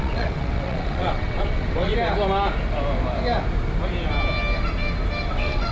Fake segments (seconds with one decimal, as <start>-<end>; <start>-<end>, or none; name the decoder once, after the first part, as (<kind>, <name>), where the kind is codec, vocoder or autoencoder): 0.0-1.9 (vocoder, WaveNeXt); 5.3-5.7